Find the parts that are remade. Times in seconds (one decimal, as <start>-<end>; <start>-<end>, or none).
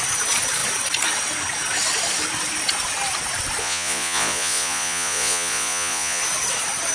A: 3.6-6.2